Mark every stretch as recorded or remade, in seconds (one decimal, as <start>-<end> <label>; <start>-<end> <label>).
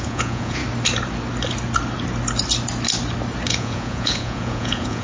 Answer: 0.0-0.6 remade; 0.6-3.5 recorded; 3.5-5.0 remade